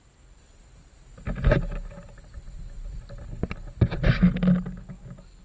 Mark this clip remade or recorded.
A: recorded